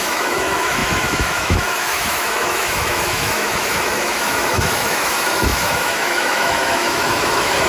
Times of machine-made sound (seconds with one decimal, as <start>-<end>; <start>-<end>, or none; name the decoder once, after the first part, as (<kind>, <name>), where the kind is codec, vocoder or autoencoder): 0.0-7.7 (autoencoder, DAC-VAE)